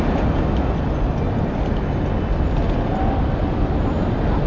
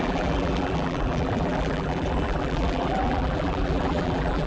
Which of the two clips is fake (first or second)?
second